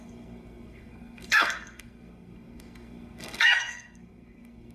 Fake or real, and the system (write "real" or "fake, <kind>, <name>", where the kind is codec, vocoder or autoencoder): fake, codec, SNAC